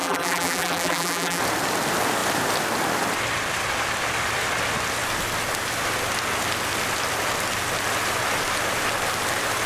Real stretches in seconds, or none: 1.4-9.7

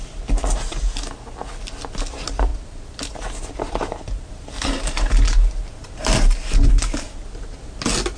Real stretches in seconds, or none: 0.0-2.5; 4.3-8.2

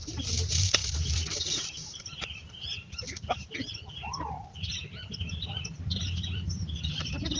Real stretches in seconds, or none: 0.0-2.7

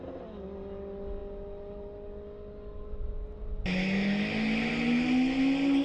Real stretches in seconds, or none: 0.0-5.8

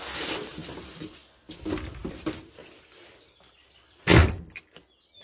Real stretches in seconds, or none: 0.0-2.0; 4.3-5.2

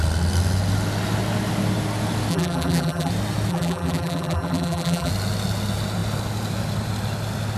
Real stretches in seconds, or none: 0.0-2.3; 3.1-3.5; 5.1-7.6

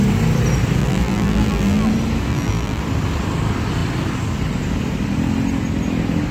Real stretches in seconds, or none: 0.0-0.8; 1.9-2.3; 2.8-6.3